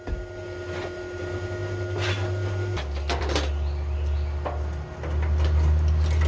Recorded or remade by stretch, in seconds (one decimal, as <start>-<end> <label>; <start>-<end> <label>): 0.0-6.3 recorded